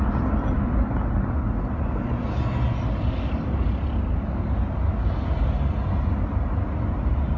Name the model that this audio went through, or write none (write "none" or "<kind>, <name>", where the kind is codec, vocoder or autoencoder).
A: none